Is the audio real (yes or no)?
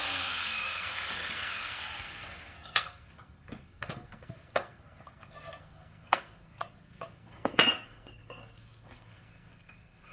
no